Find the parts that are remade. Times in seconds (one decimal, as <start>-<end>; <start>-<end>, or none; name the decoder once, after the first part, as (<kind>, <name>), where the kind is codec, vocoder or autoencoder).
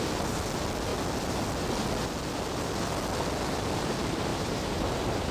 4.3-5.3 (vocoder, BigVGAN v2)